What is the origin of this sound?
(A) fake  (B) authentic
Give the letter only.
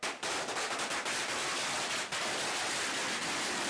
B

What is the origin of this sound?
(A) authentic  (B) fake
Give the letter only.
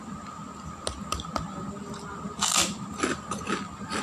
A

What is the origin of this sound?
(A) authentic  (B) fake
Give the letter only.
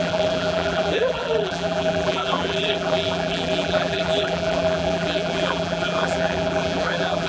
B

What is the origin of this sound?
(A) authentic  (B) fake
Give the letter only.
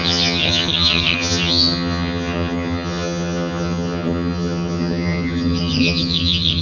B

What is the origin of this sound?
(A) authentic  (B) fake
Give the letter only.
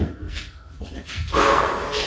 B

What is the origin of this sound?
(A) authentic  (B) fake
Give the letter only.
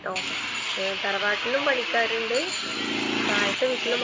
A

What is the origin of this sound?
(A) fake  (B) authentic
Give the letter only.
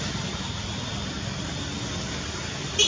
B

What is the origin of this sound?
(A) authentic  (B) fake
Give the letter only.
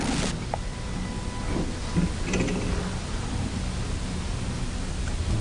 A